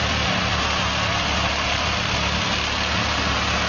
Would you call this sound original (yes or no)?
yes